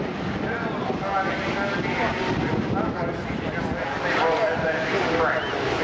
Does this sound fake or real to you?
real